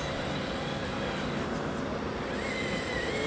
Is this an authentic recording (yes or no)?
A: yes